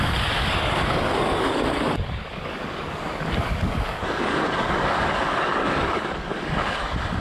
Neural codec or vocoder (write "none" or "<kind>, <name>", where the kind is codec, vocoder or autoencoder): codec, DAC